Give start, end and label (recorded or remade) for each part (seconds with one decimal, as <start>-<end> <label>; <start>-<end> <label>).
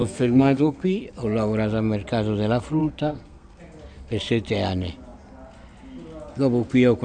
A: 0.0-1.0 remade; 1.0-2.8 recorded; 2.8-3.6 remade; 3.6-7.0 recorded